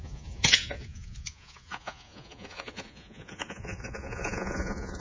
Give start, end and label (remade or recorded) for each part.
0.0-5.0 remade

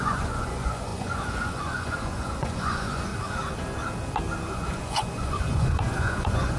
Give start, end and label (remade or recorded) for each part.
0.0-3.1 remade; 3.1-4.5 recorded; 4.5-6.6 remade

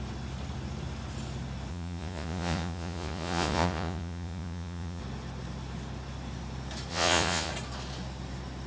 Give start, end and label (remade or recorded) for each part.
0.0-1.7 recorded; 1.7-5.0 remade; 5.0-6.9 recorded; 6.9-7.5 remade; 7.5-8.7 recorded

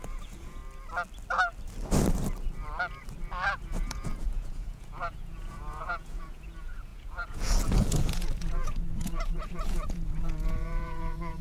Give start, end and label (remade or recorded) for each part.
0.0-0.6 remade; 0.6-3.6 recorded; 3.6-11.4 remade

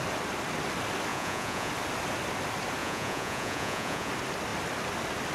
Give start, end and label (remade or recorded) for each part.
0.0-1.1 recorded; 1.1-1.7 remade; 1.7-2.8 recorded; 2.8-4.1 remade; 4.1-5.3 recorded

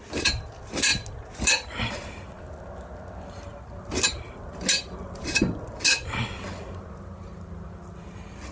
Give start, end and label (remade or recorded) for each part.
0.0-8.5 recorded